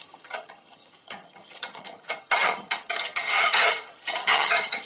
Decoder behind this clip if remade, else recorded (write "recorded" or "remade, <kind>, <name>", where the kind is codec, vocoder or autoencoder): remade, vocoder, HiFi-GAN